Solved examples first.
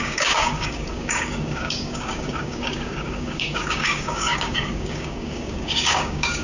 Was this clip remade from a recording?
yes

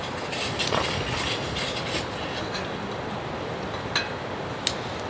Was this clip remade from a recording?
no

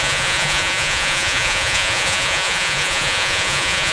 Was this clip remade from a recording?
yes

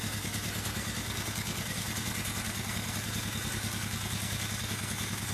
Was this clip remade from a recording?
yes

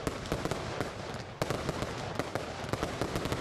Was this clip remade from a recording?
no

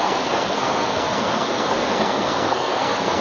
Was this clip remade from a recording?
yes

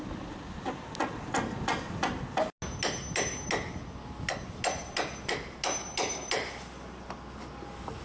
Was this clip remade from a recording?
no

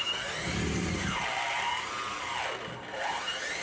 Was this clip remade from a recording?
no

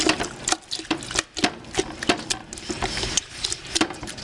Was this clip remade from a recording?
no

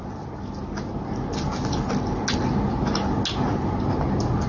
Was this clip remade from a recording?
no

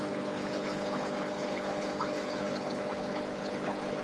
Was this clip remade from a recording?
yes